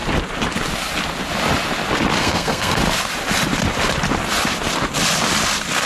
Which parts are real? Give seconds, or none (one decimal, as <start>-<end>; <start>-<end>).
0.0-2.2; 2.8-5.9